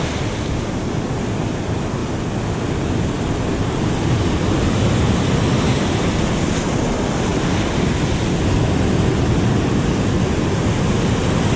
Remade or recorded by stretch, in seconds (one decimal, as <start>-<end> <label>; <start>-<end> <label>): 0.0-11.6 recorded